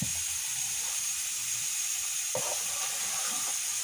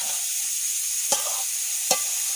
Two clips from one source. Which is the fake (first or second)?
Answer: second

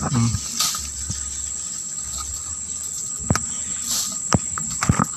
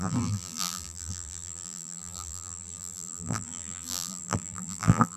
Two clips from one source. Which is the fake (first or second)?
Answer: second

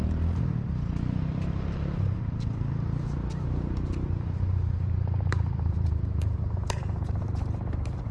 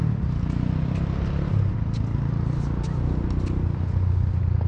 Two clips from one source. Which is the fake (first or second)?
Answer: first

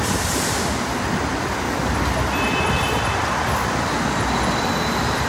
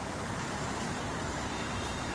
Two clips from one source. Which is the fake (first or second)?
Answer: second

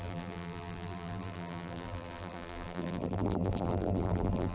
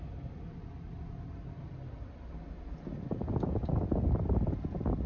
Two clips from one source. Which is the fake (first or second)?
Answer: first